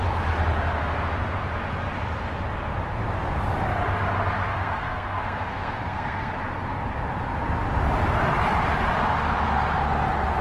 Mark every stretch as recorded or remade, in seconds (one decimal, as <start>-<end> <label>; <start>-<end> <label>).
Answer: 0.0-4.5 recorded; 4.5-6.3 remade; 6.3-10.4 recorded